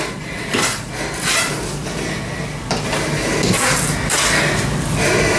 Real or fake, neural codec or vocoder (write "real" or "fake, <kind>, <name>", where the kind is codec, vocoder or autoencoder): real